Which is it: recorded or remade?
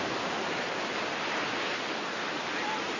recorded